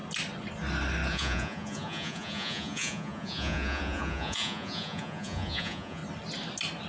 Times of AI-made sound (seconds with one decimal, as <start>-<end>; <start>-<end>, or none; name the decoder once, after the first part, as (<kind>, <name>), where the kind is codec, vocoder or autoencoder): 1.1-6.0 (vocoder, Vocos)